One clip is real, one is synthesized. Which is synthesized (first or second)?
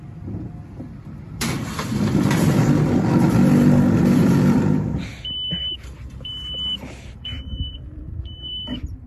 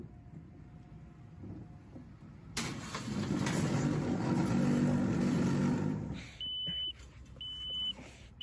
first